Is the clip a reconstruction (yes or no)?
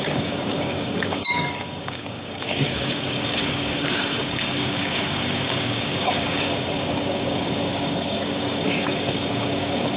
yes